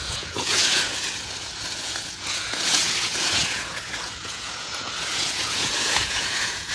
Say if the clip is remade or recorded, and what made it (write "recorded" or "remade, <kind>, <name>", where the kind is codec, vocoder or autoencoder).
remade, vocoder, Vocos